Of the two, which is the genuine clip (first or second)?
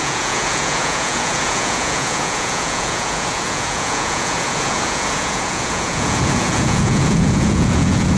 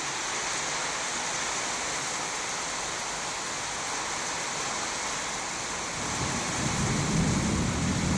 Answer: second